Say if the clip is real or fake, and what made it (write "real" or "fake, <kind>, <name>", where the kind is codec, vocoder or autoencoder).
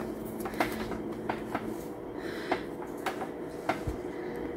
real